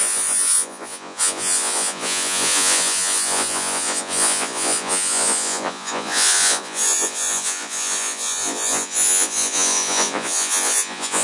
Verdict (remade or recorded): remade